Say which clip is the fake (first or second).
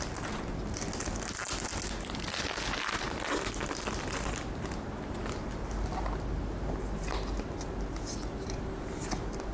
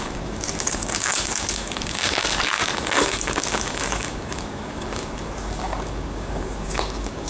second